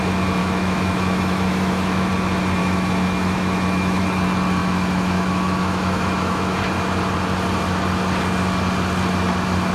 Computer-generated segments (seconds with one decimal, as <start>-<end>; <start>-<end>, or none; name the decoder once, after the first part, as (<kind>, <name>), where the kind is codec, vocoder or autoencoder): 0.4-2.1 (autoencoder, DAC-VAE); 2.6-4.0; 4.6-6.6